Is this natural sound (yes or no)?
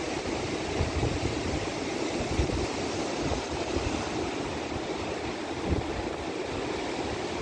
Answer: yes